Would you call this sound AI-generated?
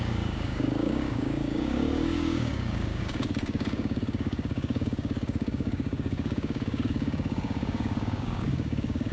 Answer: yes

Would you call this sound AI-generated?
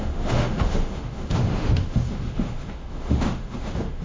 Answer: yes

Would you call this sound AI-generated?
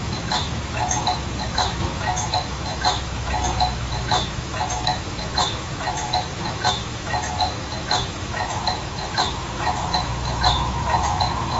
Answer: yes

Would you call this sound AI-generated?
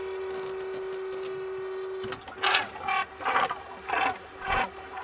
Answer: no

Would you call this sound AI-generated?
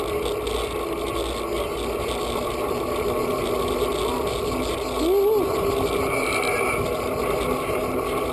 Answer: no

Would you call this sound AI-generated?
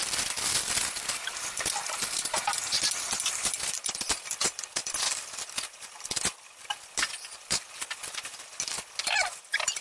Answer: no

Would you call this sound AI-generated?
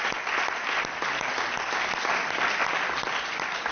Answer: no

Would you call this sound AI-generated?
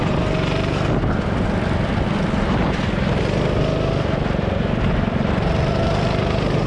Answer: no